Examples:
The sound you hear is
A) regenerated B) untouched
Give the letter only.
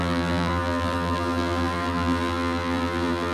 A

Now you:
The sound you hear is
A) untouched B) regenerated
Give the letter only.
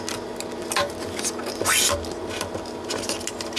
A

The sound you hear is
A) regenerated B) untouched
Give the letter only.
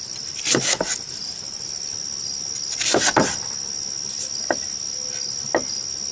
B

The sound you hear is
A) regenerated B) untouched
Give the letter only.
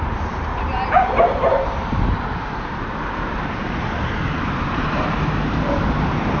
A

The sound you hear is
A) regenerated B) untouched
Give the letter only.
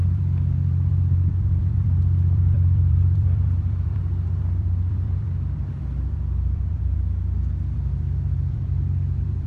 A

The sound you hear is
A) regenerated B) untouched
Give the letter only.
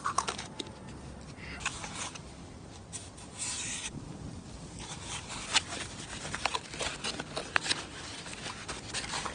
B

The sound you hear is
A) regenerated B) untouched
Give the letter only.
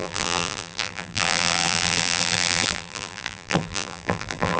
A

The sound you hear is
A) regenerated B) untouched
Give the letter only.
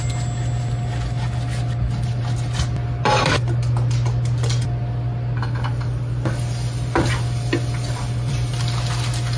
B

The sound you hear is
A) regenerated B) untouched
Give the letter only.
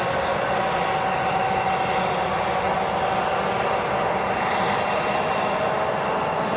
B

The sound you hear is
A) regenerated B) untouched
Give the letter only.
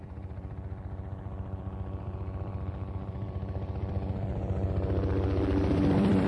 A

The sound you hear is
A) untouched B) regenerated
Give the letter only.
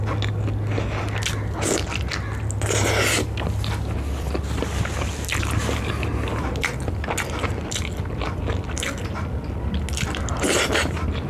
A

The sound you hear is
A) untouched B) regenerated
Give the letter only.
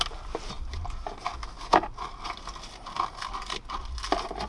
A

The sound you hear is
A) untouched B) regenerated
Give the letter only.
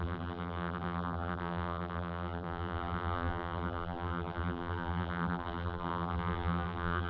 B